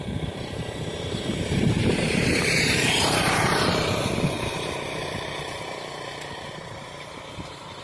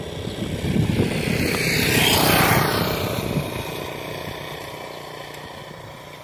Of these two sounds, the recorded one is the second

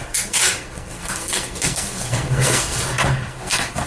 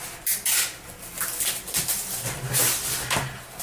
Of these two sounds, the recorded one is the second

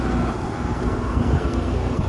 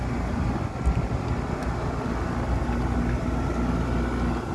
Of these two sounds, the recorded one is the second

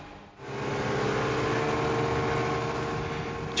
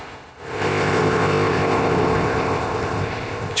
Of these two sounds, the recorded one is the first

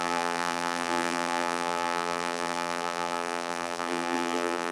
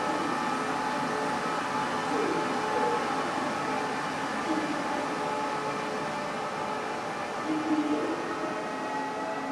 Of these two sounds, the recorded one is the second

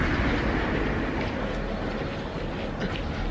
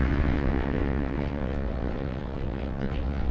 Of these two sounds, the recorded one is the first